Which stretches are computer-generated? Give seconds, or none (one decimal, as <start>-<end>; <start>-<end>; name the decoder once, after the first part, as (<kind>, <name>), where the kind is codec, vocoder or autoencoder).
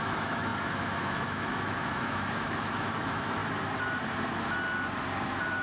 0.0-3.4 (autoencoder, DAC-VAE)